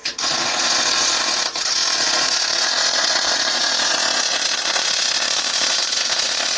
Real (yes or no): no